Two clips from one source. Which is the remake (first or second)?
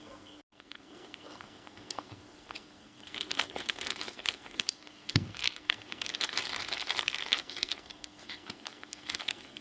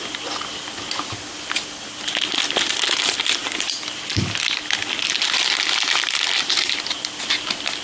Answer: first